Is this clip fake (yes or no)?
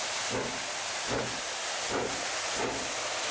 no